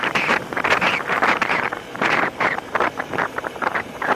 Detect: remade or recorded remade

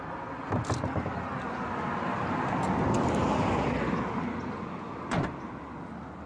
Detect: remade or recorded recorded